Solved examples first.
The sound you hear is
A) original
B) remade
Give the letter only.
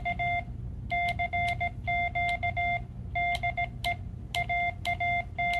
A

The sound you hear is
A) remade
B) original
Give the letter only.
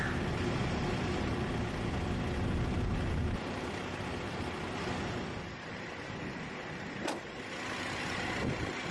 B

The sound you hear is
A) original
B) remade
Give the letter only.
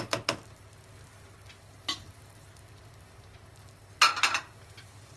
A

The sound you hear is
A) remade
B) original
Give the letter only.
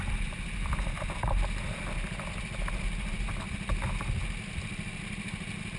B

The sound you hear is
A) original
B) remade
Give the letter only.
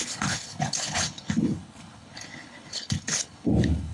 B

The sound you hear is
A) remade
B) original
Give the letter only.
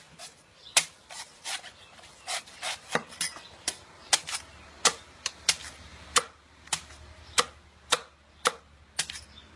B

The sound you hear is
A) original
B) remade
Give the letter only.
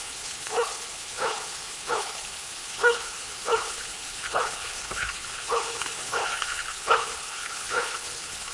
B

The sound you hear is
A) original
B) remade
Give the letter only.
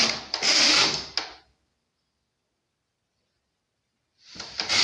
A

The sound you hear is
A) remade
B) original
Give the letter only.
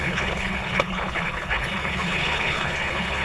A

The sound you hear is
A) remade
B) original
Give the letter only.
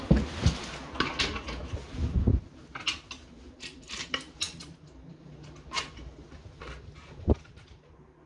B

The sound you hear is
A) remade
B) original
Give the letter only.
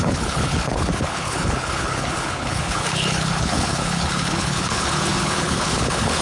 A